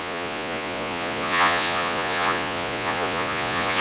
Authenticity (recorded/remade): remade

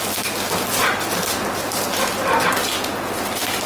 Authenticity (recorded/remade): recorded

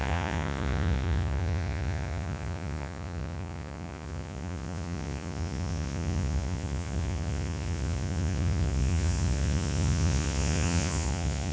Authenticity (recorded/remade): remade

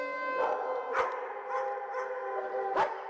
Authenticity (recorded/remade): recorded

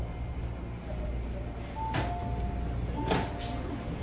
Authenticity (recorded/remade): recorded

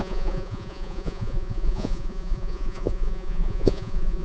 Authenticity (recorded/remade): remade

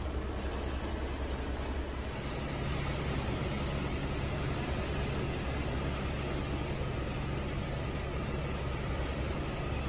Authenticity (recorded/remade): recorded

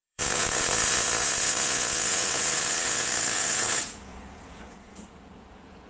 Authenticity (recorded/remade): remade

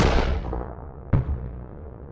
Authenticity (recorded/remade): remade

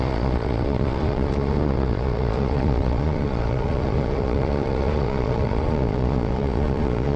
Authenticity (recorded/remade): remade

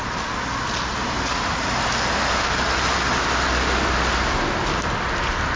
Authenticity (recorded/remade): recorded